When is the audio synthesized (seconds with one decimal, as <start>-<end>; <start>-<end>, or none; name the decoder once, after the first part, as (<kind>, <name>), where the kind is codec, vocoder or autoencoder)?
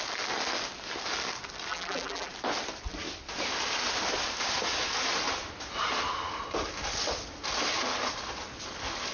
1.7-2.3 (vocoder, BigVGAN v2)